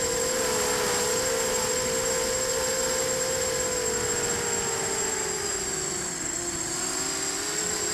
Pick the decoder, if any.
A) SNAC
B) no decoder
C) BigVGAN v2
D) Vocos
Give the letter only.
B